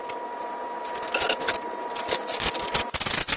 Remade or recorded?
recorded